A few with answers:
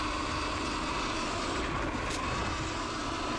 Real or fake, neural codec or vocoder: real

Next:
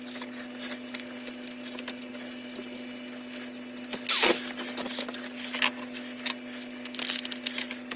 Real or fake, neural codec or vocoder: real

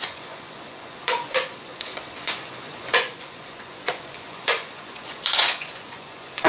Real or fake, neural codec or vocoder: fake, vocoder, Vocos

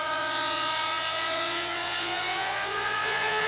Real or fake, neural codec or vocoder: fake, vocoder, Vocos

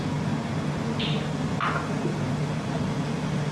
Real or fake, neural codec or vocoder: real